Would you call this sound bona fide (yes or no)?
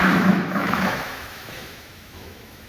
no